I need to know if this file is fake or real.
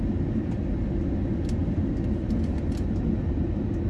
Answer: real